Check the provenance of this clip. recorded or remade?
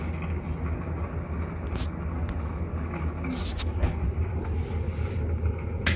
recorded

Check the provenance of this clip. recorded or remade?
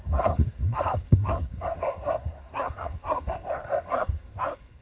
remade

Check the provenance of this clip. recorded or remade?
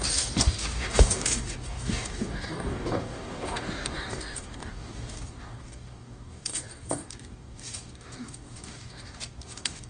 remade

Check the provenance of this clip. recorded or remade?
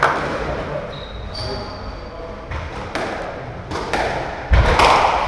recorded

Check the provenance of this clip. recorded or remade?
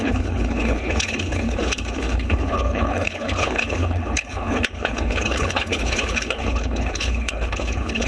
remade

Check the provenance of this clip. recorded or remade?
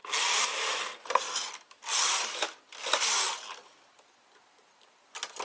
recorded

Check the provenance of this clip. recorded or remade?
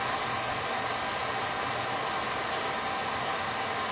recorded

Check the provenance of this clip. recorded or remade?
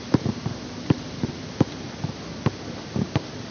recorded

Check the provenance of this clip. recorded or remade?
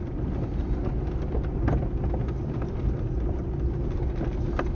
recorded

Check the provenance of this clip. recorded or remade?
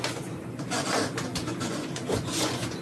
remade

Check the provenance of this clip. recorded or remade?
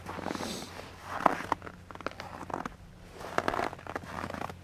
recorded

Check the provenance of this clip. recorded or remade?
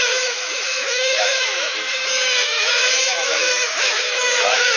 remade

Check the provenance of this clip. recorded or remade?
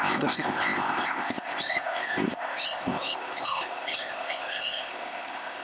remade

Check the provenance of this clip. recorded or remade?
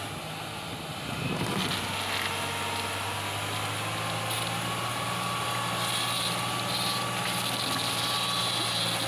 recorded